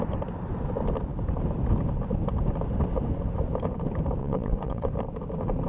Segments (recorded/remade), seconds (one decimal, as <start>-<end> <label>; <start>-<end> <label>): 0.0-4.2 recorded; 4.2-4.9 remade; 4.9-5.7 recorded